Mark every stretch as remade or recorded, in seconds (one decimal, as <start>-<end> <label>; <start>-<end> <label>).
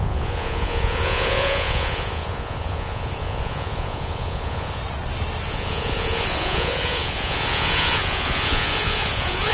0.0-4.8 remade; 4.8-5.5 recorded; 5.5-9.5 remade